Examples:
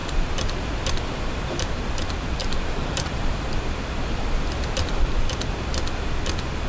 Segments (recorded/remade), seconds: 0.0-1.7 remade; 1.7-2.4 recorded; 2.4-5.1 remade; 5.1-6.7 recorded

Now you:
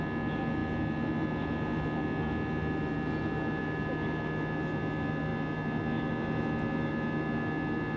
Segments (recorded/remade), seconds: 0.0-8.0 recorded

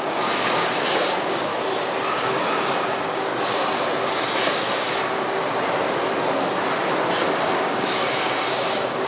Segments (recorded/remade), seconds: 0.0-1.5 remade; 1.5-2.1 recorded; 2.1-3.3 remade; 3.3-7.4 recorded; 7.4-9.1 remade